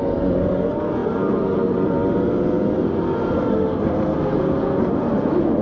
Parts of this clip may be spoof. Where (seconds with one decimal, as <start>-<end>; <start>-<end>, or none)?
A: none